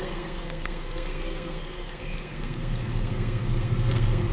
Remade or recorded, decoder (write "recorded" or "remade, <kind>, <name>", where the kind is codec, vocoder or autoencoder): remade, codec, SNAC